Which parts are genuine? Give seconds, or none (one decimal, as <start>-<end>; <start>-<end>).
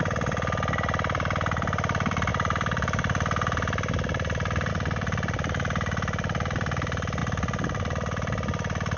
0.0-9.0